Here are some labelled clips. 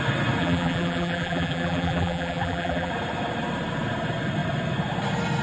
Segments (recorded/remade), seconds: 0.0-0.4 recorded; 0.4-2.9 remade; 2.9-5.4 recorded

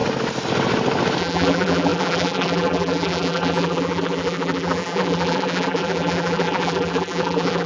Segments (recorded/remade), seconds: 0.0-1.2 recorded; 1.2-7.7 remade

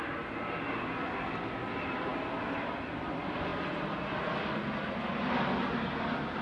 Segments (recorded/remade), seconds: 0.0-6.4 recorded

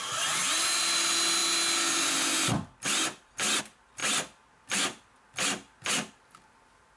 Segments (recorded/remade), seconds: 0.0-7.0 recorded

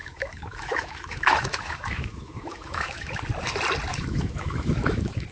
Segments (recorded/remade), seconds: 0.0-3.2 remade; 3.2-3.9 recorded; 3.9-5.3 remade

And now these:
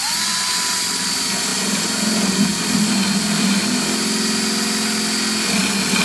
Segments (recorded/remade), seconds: 0.0-0.5 remade; 0.5-6.0 recorded